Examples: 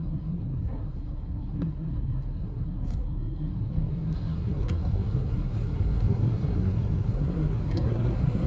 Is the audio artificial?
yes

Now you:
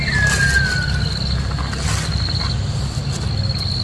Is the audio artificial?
no